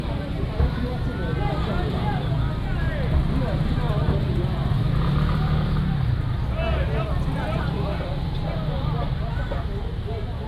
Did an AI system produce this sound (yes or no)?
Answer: no